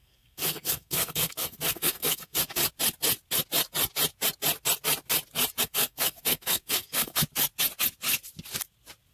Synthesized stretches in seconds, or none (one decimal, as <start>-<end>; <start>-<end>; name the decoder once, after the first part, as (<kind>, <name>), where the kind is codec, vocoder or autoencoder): 0.0-2.6 (codec, SNAC); 5.6-7.2